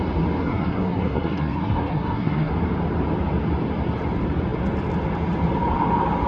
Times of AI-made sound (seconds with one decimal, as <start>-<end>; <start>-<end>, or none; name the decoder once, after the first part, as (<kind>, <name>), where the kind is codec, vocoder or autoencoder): 0.4-2.5 (codec, SNAC)